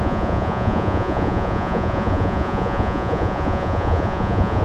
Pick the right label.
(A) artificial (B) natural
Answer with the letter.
A